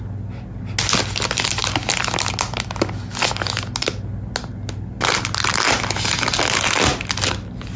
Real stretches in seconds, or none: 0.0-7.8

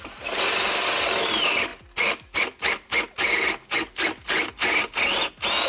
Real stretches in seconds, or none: 0.0-5.7

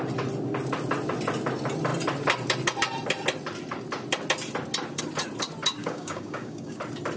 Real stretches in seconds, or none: 0.0-5.8; 6.8-7.2

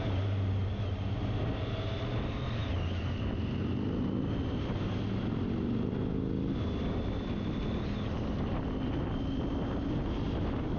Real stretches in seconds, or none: 0.0-10.8

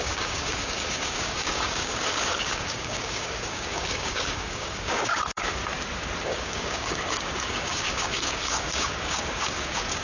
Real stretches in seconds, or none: 5.6-6.2

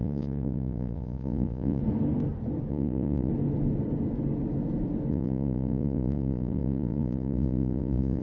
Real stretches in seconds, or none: 1.8-2.7; 3.3-5.1

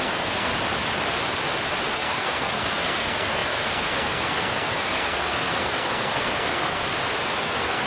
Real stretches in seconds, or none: 0.5-1.9; 6.8-7.4

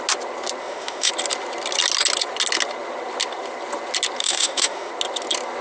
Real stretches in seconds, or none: 0.0-0.6; 1.1-4.2; 4.9-5.6